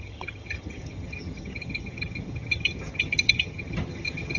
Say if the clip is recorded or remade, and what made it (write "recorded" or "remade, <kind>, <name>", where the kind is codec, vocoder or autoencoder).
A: remade, vocoder, HiFi-GAN